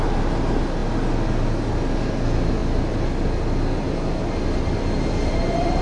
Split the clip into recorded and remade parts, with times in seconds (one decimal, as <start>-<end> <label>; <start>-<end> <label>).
0.0-5.8 recorded